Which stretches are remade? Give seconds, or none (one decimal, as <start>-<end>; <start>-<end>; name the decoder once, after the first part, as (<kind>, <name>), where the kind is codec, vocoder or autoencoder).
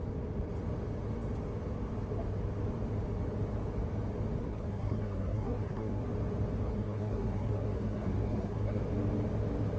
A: 4.4-6.1 (codec, SNAC); 6.7-8.8